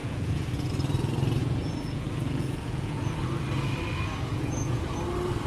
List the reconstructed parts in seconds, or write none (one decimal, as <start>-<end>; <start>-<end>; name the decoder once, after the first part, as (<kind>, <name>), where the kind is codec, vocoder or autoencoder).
0.0-0.7 (vocoder, Vocos); 1.4-3.2; 4.1-4.8